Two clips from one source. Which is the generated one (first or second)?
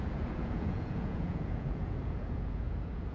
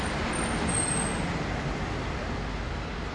first